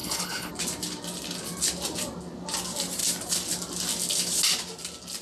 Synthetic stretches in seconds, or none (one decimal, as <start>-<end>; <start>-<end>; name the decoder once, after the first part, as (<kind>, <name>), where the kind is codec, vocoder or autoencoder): 0.0-0.5 (codec, HILCodec)